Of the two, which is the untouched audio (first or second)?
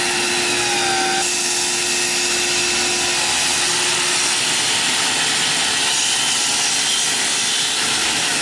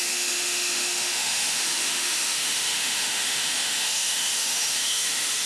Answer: first